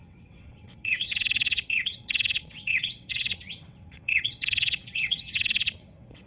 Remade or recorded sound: remade